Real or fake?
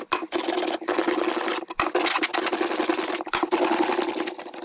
real